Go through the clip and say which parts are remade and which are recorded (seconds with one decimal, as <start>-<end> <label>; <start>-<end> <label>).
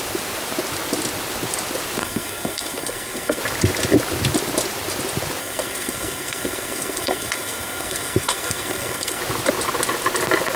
0.0-2.0 recorded; 2.0-3.4 remade; 3.4-5.4 recorded; 5.4-9.2 remade; 9.2-10.6 recorded